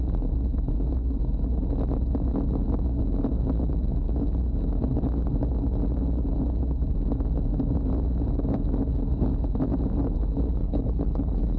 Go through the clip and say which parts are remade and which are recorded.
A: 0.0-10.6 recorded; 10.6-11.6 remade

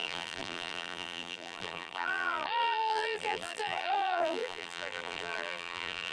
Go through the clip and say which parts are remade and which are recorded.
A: 0.0-6.1 remade

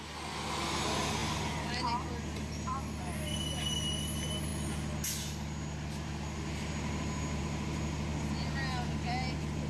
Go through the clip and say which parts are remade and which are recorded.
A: 0.0-9.7 recorded

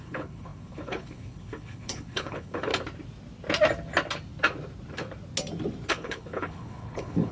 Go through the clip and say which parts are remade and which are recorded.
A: 0.0-2.7 remade; 2.7-5.9 recorded; 5.9-7.3 remade

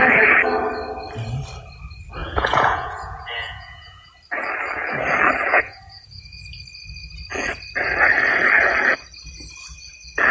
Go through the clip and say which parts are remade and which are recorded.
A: 0.0-2.2 recorded; 2.2-4.1 remade; 4.1-5.5 recorded; 5.5-6.4 remade; 6.4-10.3 recorded

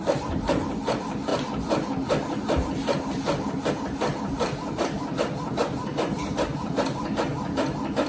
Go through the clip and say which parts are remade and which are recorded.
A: 0.0-8.1 recorded